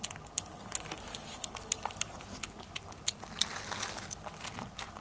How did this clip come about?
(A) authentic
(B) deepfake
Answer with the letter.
A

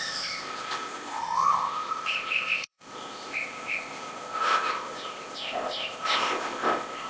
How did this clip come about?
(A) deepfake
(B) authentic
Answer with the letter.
A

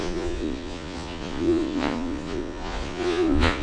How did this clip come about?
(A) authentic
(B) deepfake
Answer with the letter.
B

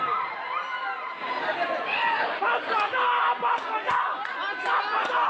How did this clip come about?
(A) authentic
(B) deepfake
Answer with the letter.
A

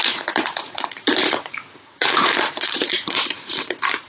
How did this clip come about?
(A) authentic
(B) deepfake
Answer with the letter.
B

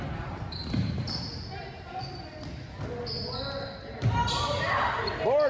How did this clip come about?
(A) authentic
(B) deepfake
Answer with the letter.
A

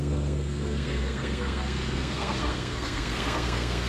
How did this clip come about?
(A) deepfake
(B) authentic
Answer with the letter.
A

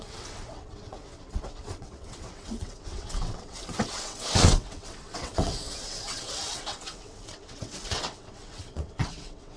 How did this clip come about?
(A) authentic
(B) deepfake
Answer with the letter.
B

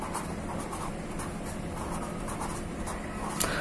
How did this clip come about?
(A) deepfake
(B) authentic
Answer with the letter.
B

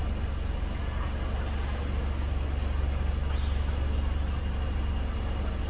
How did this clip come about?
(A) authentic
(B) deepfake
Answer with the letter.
A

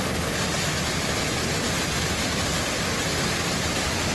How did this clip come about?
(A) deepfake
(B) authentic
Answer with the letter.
B